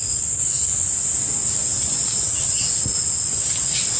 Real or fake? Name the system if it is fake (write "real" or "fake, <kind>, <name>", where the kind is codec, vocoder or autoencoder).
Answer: real